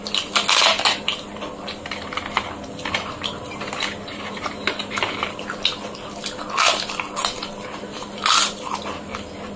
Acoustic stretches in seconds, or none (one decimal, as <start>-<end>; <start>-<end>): 0.0-9.6

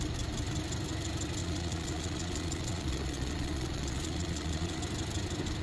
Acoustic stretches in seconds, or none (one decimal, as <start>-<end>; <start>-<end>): 0.0-1.4; 4.8-5.6

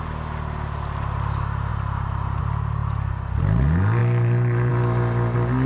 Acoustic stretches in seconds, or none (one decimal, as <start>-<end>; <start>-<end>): 0.0-1.7; 2.4-5.7

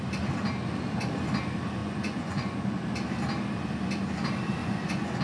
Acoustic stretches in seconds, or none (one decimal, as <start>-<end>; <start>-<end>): 0.0-1.8; 2.7-4.6

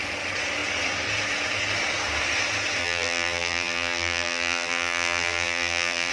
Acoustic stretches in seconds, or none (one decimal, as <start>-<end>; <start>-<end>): 0.0-2.8